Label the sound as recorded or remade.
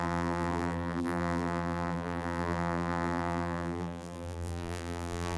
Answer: remade